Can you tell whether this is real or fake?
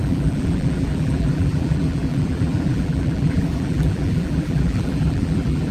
fake